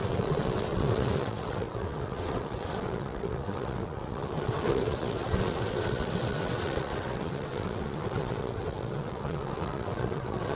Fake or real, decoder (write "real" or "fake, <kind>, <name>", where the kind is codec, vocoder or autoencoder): fake, vocoder, WaveNeXt